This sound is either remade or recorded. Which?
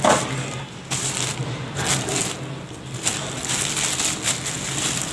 recorded